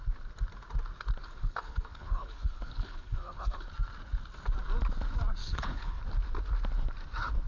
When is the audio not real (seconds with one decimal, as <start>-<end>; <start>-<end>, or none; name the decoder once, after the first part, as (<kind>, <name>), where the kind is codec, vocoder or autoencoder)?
1.2-3.6 (codec, HILCodec); 5.4-6.0